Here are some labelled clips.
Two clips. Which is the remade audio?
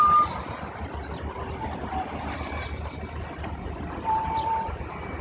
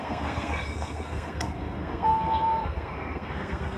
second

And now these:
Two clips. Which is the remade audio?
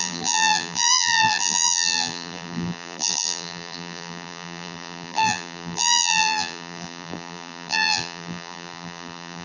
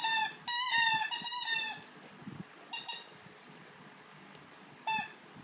first